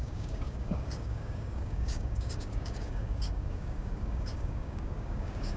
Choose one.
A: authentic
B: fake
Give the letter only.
B